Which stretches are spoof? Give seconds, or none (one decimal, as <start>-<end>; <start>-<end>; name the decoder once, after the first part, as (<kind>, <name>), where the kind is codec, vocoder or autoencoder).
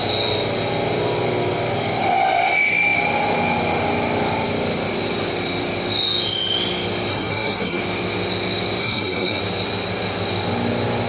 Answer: 7.1-7.8 (codec, SNAC); 8.8-9.4